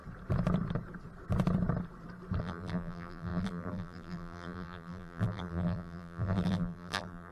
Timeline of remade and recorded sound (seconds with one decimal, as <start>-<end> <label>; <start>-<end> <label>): 0.0-2.4 recorded; 2.4-7.3 remade